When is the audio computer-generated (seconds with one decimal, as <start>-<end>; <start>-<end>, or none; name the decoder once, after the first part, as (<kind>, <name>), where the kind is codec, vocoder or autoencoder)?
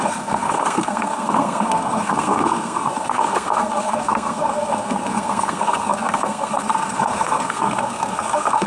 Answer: 0.0-8.7 (codec, SNAC)